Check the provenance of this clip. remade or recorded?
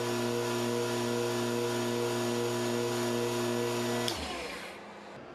recorded